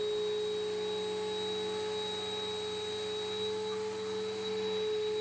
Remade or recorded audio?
recorded